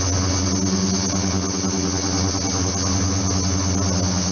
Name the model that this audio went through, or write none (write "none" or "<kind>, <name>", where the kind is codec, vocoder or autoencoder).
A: none